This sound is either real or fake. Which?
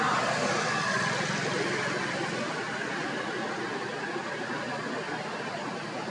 real